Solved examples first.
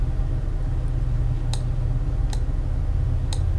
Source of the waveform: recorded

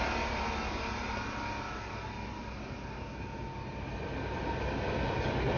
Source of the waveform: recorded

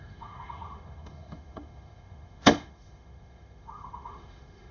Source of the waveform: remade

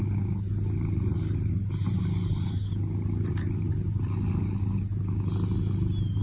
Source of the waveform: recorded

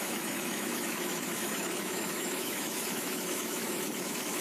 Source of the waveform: remade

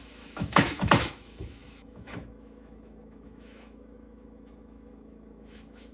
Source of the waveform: remade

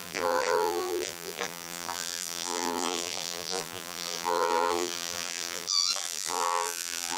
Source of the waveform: remade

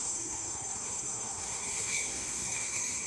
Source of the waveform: remade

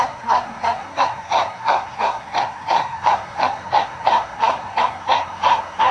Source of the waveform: remade